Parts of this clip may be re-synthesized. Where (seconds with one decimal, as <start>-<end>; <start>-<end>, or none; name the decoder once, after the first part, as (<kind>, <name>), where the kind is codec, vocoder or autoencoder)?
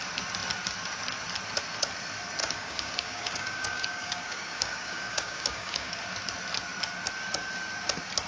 2.4-6.0 (codec, DAC)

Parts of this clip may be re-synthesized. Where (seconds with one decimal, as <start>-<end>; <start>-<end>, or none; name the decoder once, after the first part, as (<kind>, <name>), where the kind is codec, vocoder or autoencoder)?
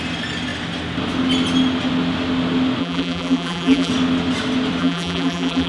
2.8-3.9 (vocoder, BigVGAN v2); 4.8-5.7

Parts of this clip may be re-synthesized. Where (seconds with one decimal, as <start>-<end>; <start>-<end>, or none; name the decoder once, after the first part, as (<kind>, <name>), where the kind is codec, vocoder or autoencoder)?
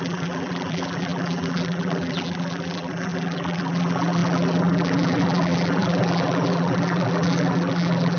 0.0-8.2 (vocoder, BigVGAN v2)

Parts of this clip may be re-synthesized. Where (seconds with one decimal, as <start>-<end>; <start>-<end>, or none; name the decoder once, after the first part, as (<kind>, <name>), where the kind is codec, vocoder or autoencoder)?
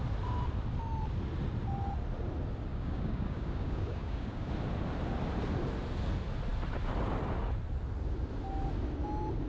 2.7-4.5 (codec, DAC)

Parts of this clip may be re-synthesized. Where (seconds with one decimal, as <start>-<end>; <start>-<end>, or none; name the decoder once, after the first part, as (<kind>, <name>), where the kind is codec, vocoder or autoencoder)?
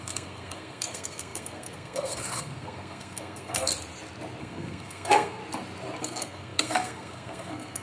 0.0-3.7 (codec, SNAC); 4.4-5.4; 6.0-7.8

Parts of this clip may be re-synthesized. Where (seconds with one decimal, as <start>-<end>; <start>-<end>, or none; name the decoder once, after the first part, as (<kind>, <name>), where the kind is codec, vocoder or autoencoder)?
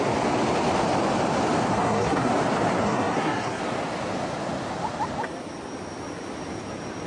1.7-2.3 (codec, SNAC); 2.8-3.6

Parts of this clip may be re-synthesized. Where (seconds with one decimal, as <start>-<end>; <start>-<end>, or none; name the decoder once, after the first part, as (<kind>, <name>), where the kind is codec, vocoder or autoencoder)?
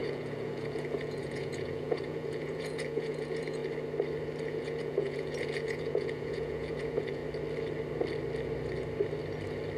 0.0-3.6 (vocoder, Vocos); 4.4-7.2